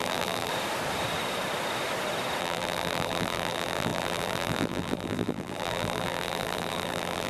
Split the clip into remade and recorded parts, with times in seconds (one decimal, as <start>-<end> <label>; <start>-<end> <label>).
0.0-0.5 remade; 0.5-2.4 recorded; 2.4-7.3 remade